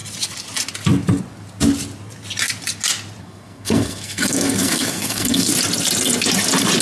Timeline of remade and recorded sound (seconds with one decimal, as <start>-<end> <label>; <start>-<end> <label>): 0.0-3.2 recorded; 3.2-5.5 remade; 5.5-6.8 recorded